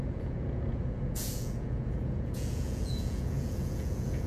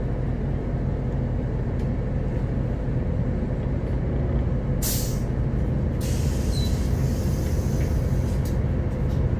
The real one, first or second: second